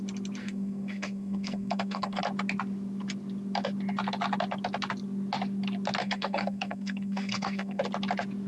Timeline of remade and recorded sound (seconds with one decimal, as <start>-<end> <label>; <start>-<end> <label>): 0.0-0.4 recorded; 0.4-2.2 remade; 2.2-6.0 recorded; 6.0-7.8 remade; 7.8-8.5 recorded